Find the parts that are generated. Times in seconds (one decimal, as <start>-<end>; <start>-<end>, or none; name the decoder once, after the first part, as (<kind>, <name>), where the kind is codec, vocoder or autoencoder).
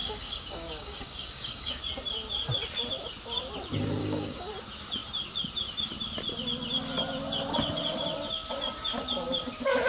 0.0-1.8 (codec, DAC); 4.0-4.5